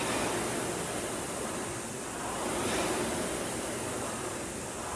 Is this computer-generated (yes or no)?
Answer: no